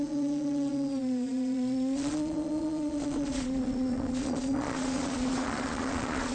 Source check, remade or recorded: remade